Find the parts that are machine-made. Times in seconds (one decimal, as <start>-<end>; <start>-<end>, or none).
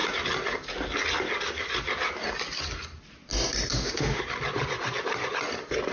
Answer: 3.7-4.2